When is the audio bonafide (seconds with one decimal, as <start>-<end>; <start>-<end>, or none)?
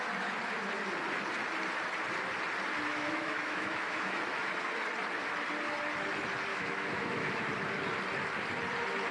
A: 0.0-2.9; 4.2-6.5; 7.5-9.1